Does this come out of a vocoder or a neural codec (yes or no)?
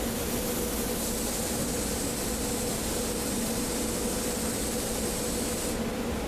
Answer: no